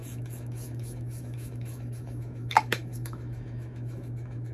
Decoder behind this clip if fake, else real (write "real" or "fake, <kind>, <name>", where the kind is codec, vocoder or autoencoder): fake, autoencoder, DAC-VAE